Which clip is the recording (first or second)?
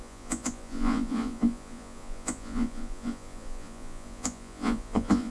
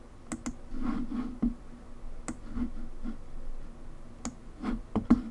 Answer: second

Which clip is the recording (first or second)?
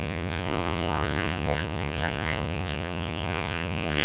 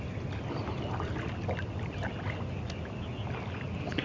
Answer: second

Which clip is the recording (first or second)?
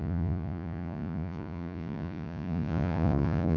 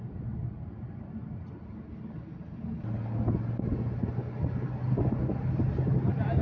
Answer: second